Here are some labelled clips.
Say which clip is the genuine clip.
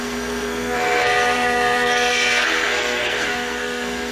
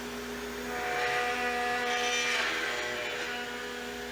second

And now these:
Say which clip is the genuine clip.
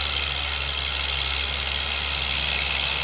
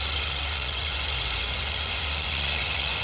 first